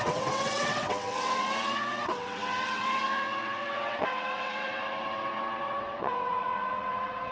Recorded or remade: remade